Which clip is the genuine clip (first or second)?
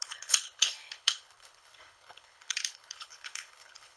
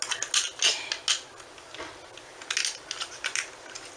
second